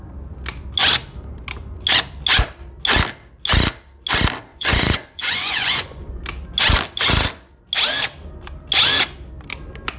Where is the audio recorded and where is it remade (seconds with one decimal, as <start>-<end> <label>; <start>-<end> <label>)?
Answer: 0.0-4.5 recorded; 4.5-6.2 remade; 6.2-10.0 recorded